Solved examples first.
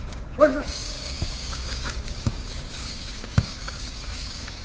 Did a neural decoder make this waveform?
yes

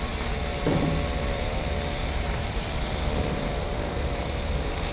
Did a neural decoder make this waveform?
yes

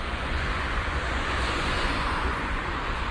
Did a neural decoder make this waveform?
yes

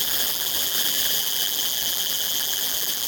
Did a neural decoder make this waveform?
yes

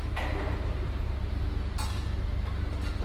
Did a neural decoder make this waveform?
no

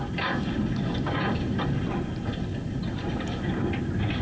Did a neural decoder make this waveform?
no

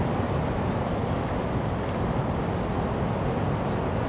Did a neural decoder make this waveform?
no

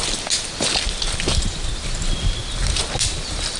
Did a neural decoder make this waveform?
no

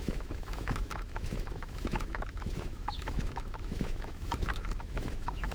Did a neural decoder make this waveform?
yes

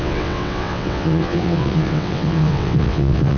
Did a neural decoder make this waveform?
yes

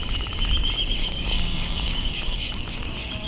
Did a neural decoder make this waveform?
yes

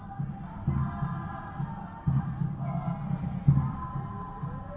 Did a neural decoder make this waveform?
no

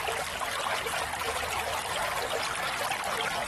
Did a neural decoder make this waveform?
no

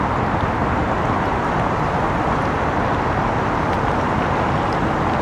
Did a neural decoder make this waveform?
no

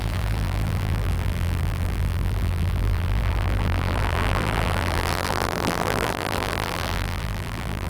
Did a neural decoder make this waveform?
yes